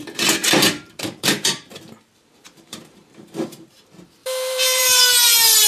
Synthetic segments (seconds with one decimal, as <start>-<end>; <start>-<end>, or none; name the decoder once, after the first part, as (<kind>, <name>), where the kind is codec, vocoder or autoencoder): 0.4-3.8 (vocoder, BigVGAN v2); 4.2-5.0

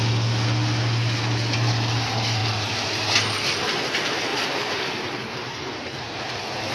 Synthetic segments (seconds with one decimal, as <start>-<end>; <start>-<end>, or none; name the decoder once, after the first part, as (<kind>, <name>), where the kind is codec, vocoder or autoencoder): 4.3-6.2 (vocoder, BigVGAN v2)

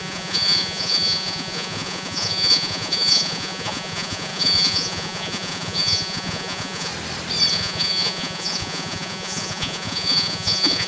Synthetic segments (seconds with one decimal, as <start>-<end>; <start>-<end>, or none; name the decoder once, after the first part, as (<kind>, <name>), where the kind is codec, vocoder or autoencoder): 0.0-6.9 (vocoder, Vocos); 7.5-10.9